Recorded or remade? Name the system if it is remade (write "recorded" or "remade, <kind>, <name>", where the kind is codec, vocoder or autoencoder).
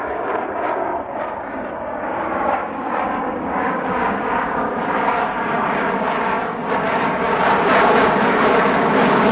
remade, codec, DAC